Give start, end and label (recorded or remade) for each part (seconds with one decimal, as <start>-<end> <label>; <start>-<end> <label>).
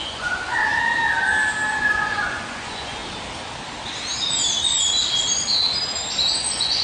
0.0-0.7 remade; 0.7-1.7 recorded; 1.7-3.0 remade; 3.0-6.3 recorded; 6.3-6.8 remade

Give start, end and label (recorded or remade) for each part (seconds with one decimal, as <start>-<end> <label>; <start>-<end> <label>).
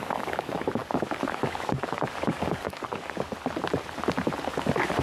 0.0-3.3 remade; 3.3-5.0 recorded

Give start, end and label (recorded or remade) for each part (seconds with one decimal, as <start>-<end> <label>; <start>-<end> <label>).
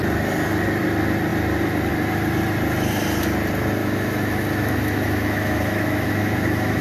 0.0-3.8 recorded; 3.8-6.8 remade